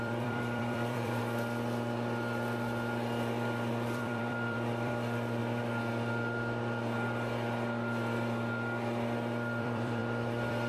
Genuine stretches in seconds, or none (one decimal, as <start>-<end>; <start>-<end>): 1.2-3.7; 5.4-9.6